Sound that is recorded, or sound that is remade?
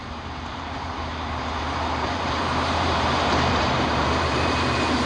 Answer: remade